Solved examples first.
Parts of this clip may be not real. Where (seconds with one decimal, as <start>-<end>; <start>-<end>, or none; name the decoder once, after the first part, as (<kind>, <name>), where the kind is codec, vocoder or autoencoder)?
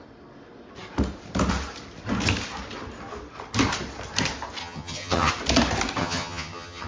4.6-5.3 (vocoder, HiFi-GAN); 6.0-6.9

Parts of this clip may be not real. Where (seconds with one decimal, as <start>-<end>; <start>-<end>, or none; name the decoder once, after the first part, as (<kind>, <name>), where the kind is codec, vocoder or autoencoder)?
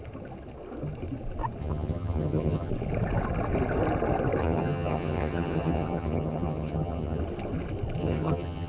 1.6-2.7 (vocoder, HiFi-GAN); 4.4-7.2; 8.0-8.7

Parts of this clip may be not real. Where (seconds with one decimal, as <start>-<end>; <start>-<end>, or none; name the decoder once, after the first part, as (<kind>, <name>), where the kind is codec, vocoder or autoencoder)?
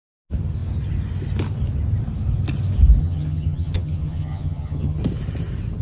3.0-5.0 (vocoder, HiFi-GAN)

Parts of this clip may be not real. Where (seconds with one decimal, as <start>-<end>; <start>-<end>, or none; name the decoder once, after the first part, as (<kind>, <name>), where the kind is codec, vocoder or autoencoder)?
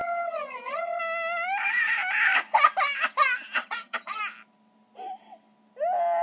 0.0-1.0 (vocoder, HiFi-GAN); 3.6-4.2